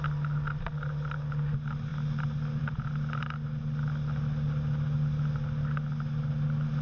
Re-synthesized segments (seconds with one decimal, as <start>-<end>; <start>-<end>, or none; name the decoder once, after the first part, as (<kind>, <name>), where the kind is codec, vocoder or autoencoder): none